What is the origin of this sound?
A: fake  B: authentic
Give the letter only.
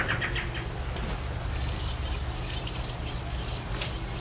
B